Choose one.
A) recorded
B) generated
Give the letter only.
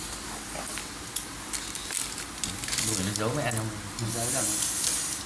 A